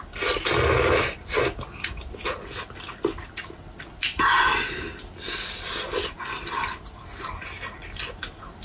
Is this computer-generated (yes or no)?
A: no